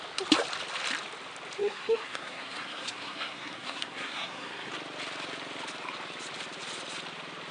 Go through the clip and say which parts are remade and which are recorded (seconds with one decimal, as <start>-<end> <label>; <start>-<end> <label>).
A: 0.0-1.6 recorded; 1.6-4.7 remade; 4.7-7.5 recorded

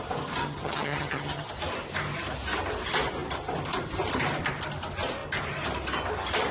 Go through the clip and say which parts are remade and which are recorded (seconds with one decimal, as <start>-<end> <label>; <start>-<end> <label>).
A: 0.0-0.4 recorded; 0.4-1.5 remade; 1.5-6.5 recorded

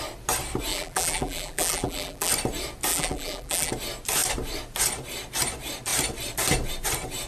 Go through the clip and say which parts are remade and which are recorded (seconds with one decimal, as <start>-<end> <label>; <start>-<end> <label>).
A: 0.0-0.7 recorded; 0.7-2.3 remade; 2.3-2.9 recorded; 2.9-3.7 remade; 3.7-7.3 recorded

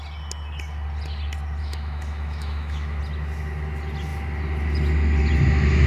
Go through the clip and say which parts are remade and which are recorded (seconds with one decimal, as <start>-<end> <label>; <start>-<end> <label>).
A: 0.0-1.6 recorded; 1.6-3.0 remade; 3.0-5.9 recorded